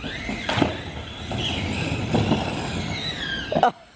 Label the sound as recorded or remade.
recorded